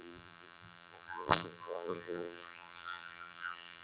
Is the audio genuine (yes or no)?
no